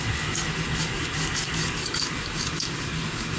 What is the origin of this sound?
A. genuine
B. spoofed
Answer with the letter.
B